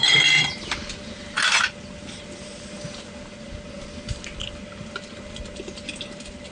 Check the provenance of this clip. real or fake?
real